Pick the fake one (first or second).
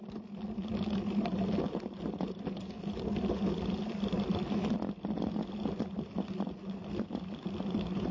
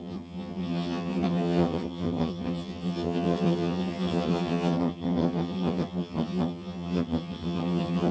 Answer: second